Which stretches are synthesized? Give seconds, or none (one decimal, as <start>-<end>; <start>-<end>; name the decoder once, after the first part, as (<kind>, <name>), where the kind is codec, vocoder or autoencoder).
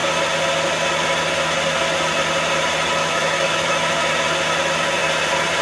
3.0-3.9 (autoencoder, DAC-VAE)